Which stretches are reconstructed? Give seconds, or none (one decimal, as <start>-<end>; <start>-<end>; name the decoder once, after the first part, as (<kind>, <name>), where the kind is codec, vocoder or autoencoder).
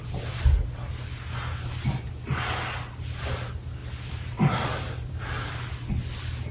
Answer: 3.8-5.2 (vocoder, BigVGAN v2)